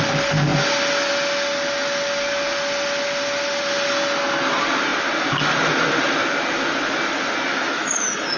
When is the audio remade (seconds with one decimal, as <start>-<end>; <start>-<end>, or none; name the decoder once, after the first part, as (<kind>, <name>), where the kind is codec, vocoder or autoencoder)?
7.5-8.4 (autoencoder, DAC-VAE)